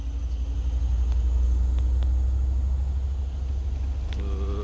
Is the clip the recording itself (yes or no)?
yes